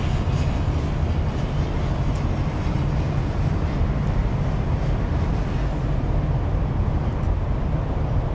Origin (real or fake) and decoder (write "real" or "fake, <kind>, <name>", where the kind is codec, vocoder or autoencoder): real